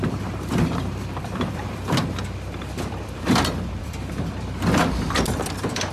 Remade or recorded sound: remade